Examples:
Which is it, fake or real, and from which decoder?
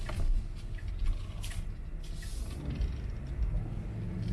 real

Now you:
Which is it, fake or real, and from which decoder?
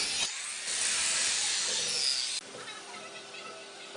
real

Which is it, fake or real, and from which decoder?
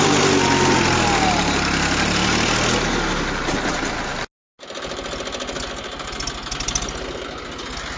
real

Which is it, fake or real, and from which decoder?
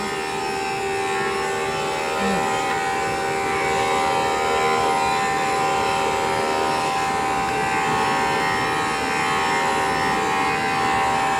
real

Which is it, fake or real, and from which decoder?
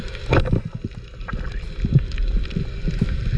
real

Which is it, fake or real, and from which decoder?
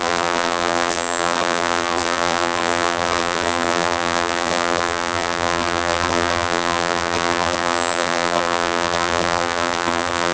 fake, vocoder, BigVGAN v2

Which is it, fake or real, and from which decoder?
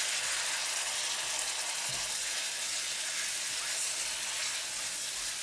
real